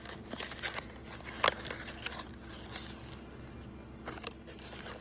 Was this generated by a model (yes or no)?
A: no